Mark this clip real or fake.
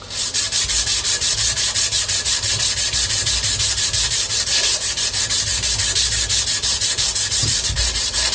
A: fake